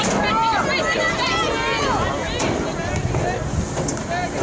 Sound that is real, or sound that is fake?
real